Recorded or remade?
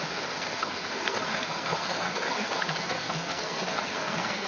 remade